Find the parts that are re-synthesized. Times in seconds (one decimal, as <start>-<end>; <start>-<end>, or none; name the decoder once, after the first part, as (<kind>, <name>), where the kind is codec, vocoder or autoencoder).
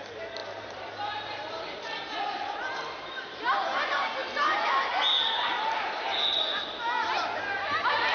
0.4-2.2 (vocoder, BigVGAN v2)